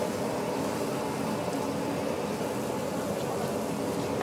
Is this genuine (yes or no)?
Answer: yes